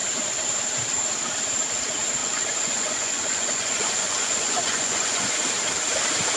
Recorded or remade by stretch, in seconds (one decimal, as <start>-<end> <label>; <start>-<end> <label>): 0.0-2.2 recorded; 2.2-5.5 remade; 5.5-6.4 recorded